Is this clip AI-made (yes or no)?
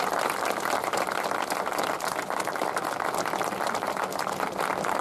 no